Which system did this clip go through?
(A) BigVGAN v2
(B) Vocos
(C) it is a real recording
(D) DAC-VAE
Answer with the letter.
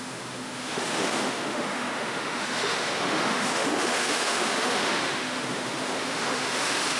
D